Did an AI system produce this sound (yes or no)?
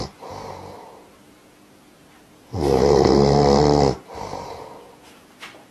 no